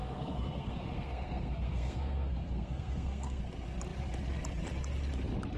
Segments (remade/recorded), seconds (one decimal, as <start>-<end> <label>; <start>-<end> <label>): 0.0-3.4 remade; 3.4-5.6 recorded